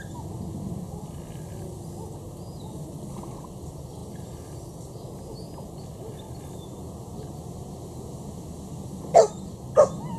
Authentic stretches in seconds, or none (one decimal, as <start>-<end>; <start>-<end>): 0.0-10.2